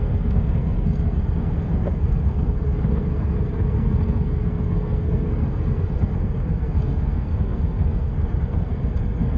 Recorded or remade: remade